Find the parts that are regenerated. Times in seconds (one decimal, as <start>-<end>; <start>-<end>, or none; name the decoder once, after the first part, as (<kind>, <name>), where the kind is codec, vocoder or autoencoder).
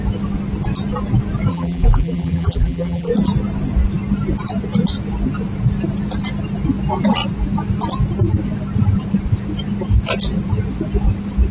1.5-3.1 (vocoder, BigVGAN v2)